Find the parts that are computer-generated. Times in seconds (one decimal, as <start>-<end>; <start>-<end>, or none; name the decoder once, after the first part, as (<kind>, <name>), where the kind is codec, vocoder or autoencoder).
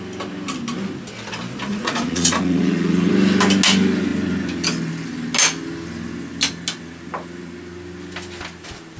1.7-3.1 (vocoder, Vocos)